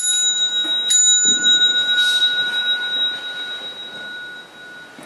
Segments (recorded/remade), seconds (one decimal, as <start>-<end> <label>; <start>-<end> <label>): 0.0-3.8 recorded; 3.8-4.4 remade; 4.4-5.1 recorded